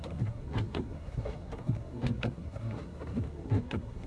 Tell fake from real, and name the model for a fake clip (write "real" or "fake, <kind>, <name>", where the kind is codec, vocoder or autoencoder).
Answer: fake, codec, SNAC